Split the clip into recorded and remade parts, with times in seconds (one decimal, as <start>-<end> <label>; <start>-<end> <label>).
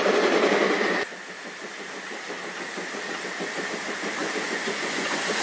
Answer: 0.0-4.2 recorded; 4.2-5.4 remade